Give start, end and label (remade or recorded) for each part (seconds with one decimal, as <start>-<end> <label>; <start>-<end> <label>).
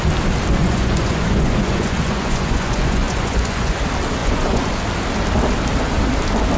0.0-0.6 recorded; 0.6-3.8 remade; 3.8-4.2 recorded; 4.2-4.7 remade; 4.7-6.6 recorded